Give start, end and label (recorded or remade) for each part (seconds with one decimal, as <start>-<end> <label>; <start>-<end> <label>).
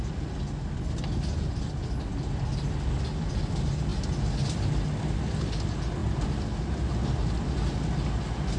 0.0-8.6 recorded